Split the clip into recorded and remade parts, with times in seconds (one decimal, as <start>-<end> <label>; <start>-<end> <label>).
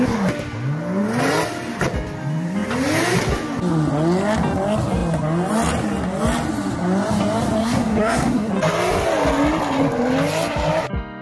0.0-7.6 recorded; 7.6-8.5 remade; 8.5-11.2 recorded